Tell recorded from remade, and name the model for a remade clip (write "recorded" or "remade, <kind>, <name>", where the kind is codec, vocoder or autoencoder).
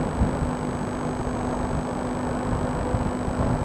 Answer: recorded